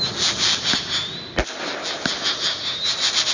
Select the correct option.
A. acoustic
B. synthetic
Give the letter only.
A